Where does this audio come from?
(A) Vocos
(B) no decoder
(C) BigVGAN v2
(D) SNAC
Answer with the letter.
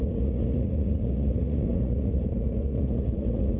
A